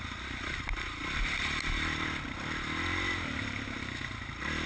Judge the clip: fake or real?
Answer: real